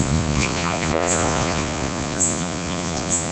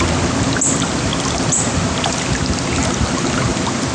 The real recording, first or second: second